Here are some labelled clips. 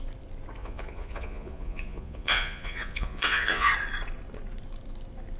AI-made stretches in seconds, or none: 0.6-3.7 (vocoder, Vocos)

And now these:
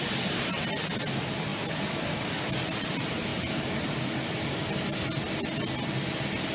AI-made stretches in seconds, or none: none

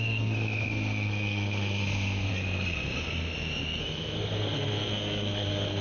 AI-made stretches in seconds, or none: 0.0-2.3 (codec, SNAC); 3.8-5.8

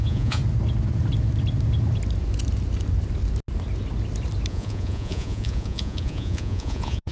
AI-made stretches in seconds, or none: 0.0-0.4 (vocoder, Vocos); 4.5-7.1